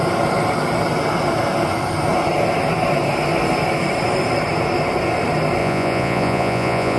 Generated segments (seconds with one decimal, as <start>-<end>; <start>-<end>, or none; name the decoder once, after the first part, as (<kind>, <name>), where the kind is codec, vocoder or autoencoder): 5.6-7.0 (vocoder, Vocos)